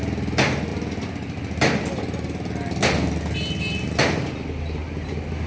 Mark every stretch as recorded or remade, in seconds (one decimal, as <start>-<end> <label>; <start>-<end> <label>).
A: 0.0-5.5 recorded